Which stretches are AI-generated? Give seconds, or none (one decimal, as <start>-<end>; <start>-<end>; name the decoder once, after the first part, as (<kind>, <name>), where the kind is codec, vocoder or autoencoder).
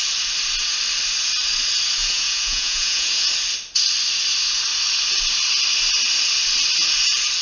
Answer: 2.0-3.3 (vocoder, Vocos)